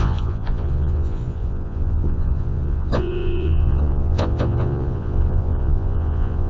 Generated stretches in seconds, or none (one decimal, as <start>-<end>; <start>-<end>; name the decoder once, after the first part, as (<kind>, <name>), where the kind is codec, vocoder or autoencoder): 0.0-6.5 (vocoder, Vocos)

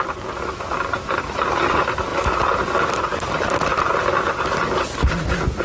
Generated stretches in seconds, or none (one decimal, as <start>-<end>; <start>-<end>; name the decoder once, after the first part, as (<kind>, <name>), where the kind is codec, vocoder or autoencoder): none

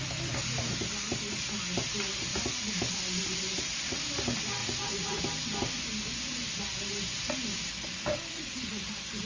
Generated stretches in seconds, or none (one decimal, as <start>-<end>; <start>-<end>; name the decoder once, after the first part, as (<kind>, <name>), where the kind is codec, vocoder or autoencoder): 4.6-5.2 (vocoder, Vocos); 8.3-8.9

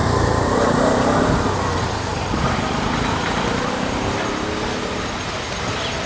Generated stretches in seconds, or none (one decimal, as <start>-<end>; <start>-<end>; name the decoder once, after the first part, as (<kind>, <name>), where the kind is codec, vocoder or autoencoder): 0.0-3.7 (vocoder, BigVGAN v2)

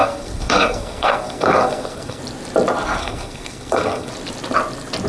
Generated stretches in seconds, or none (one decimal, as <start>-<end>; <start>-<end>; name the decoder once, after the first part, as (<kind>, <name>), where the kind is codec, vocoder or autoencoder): 0.0-2.2 (codec, SNAC); 3.0-4.1

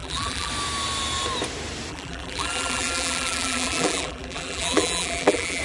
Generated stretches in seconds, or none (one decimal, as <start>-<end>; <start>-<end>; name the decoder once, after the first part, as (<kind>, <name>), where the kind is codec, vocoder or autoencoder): 0.0-0.5 (vocoder, BigVGAN v2); 1.9-5.6